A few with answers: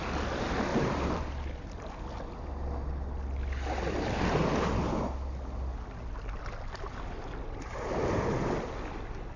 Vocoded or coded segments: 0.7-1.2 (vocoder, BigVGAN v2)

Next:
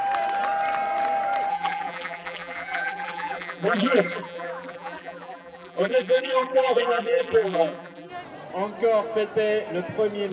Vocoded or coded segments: 1.5-8.1 (vocoder, BigVGAN v2)

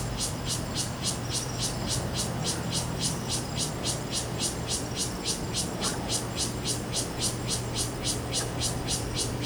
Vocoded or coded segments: 2.4-3.7 (vocoder, BigVGAN v2)